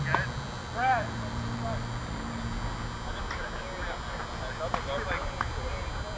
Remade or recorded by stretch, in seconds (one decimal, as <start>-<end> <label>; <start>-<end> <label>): 0.0-0.6 recorded; 0.6-2.4 remade; 2.4-6.2 recorded

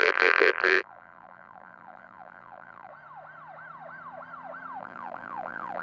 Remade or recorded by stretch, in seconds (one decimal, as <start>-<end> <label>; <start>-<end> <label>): 0.0-2.9 remade; 2.9-4.8 recorded; 4.8-5.8 remade

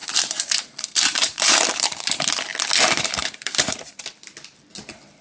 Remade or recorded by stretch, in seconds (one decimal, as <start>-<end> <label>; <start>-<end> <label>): 0.0-2.2 remade; 2.2-3.2 recorded; 3.2-4.1 remade; 4.1-5.2 recorded